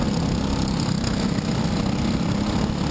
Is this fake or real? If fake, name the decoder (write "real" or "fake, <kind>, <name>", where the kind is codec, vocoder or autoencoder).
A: real